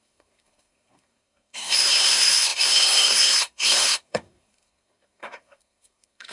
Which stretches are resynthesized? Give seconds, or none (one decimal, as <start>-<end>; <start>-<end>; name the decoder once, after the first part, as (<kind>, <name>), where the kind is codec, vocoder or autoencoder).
0.0-6.3 (codec, SNAC)